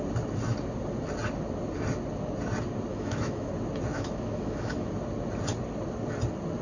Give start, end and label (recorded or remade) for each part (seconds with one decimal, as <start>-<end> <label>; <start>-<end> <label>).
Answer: 0.0-2.9 recorded; 2.9-3.5 remade; 3.5-3.9 recorded; 3.9-4.9 remade; 4.9-6.6 recorded